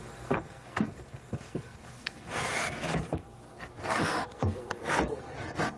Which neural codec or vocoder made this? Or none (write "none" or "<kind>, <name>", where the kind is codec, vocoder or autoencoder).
codec, SNAC